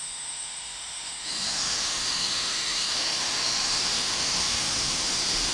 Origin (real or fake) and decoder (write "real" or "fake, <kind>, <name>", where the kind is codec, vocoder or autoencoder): fake, autoencoder, DAC-VAE